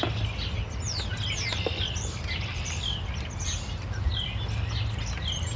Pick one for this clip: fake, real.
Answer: real